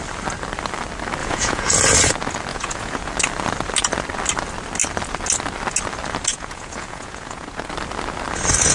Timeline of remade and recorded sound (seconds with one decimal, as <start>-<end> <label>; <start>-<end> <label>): 0.0-1.2 recorded; 1.2-1.8 remade; 1.8-2.5 recorded; 2.5-3.1 remade; 3.1-6.3 recorded; 6.3-7.7 remade; 7.7-8.7 recorded